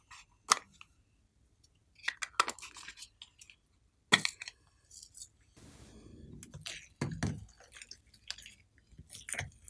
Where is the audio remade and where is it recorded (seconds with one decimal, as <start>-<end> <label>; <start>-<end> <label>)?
0.0-9.7 recorded